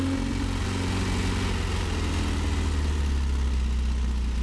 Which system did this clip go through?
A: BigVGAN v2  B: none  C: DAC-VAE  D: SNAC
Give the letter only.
B